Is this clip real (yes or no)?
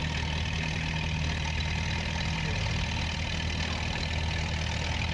yes